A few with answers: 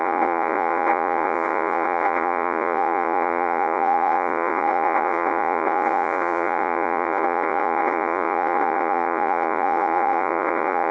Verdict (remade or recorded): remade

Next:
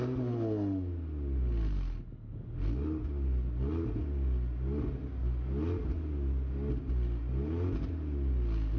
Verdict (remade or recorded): recorded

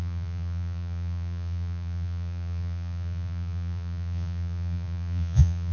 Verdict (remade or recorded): remade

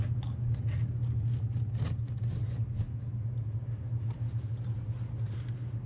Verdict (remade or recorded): recorded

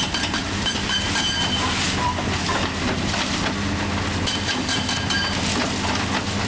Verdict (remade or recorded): recorded